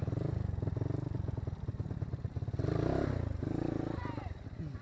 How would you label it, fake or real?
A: real